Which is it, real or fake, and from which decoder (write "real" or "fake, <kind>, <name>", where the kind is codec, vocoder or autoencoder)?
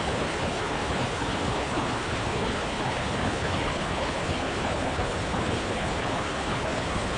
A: fake, codec, HILCodec